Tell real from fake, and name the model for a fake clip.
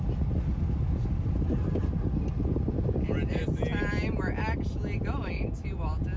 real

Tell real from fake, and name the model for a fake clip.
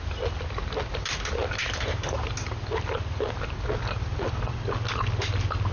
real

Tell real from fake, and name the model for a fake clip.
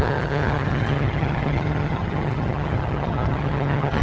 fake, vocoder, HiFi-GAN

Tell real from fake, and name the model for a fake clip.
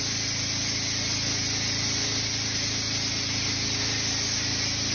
real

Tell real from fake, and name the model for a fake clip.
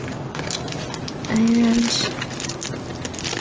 real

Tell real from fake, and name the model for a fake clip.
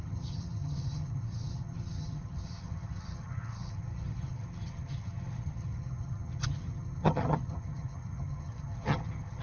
fake, vocoder, HiFi-GAN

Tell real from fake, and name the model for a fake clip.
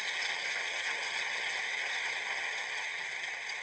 fake, vocoder, HiFi-GAN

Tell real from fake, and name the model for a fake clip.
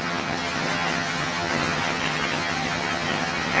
fake, vocoder, HiFi-GAN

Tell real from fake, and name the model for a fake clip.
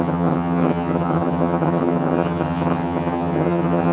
fake, vocoder, HiFi-GAN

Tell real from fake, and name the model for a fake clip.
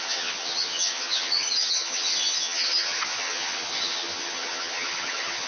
fake, vocoder, HiFi-GAN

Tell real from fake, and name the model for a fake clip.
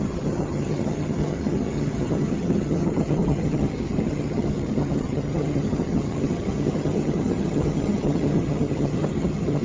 fake, vocoder, HiFi-GAN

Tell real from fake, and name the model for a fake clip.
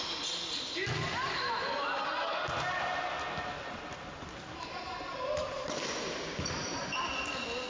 real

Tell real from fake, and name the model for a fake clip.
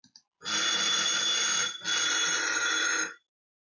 real